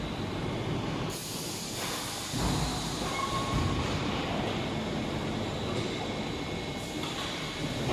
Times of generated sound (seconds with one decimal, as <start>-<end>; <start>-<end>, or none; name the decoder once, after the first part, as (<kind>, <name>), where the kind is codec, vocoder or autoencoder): none